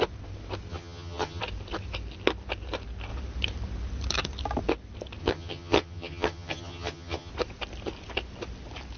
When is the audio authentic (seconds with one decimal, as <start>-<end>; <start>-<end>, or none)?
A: 0.0-0.7; 1.4-5.2; 7.3-9.0

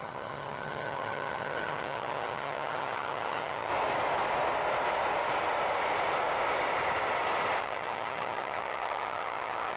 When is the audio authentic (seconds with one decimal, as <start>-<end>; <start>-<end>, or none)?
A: 3.7-7.6

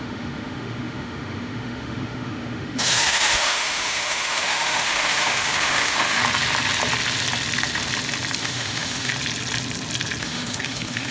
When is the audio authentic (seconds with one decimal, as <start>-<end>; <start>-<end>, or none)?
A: 6.2-8.4; 9.1-10.2

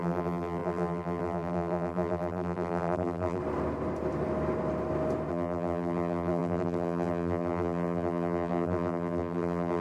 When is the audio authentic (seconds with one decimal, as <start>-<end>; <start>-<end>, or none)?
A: 3.4-5.3

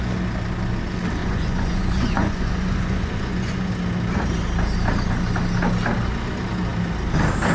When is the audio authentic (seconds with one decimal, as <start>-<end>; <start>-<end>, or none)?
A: 0.0-1.2; 3.7-7.5

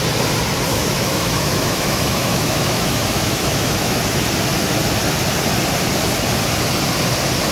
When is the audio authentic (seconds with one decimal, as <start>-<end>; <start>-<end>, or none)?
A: 0.0-0.7; 4.0-7.5

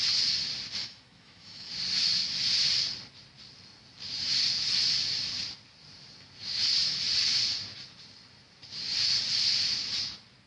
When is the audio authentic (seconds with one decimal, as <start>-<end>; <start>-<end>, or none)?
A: 0.0-0.8; 1.7-10.5

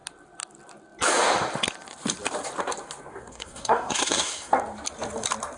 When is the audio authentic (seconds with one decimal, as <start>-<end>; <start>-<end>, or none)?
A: 0.0-3.1; 4.5-5.6